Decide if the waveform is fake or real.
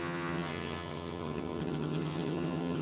fake